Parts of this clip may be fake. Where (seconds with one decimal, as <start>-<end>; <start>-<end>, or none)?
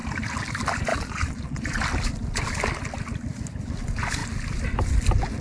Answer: 0.9-1.6